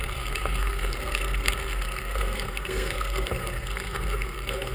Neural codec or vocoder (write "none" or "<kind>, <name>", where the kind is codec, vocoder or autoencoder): codec, SNAC